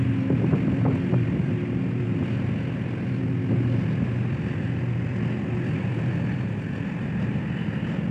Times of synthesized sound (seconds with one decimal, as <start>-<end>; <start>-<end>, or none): none